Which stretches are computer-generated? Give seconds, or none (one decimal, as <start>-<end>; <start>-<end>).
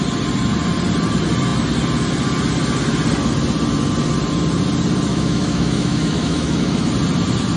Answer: 5.1-6.9